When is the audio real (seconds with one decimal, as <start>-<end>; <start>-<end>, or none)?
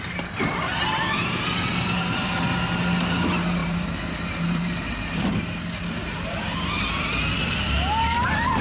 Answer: 0.0-1.7; 2.4-3.6; 5.2-8.6